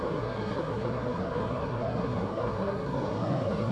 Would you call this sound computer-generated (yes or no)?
yes